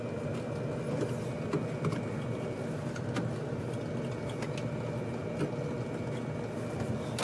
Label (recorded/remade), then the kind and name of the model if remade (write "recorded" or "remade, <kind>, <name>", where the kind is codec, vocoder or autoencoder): recorded